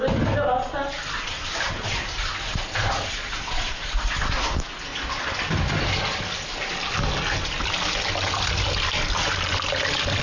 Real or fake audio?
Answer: real